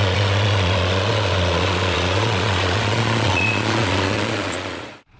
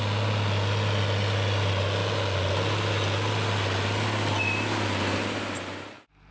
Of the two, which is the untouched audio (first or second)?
second